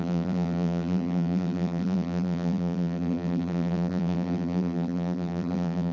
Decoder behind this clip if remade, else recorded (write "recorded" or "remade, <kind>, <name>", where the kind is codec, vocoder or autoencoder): remade, vocoder, BigVGAN v2